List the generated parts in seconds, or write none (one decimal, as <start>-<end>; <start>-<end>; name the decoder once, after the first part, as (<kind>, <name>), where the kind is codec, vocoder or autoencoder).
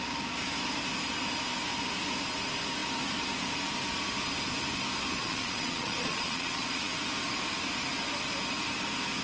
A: 5.2-6.9 (vocoder, Vocos)